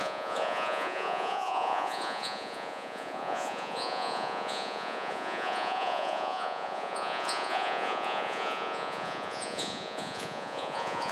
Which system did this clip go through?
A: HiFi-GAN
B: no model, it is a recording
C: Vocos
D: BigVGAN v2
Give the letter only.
C